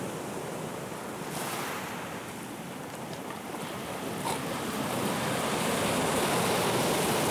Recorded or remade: recorded